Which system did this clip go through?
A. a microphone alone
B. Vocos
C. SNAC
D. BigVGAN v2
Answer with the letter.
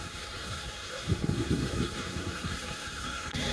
C